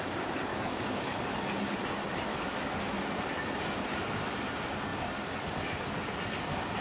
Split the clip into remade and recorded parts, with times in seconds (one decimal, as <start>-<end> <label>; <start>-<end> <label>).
0.0-0.5 recorded; 0.5-1.2 remade; 1.2-2.3 recorded; 2.3-3.0 remade; 3.0-6.8 recorded